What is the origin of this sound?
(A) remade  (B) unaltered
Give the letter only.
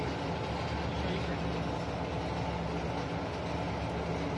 B